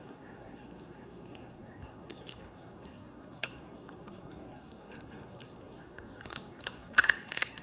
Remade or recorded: remade